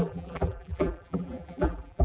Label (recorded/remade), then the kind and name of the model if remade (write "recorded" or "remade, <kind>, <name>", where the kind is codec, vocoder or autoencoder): remade, vocoder, BigVGAN v2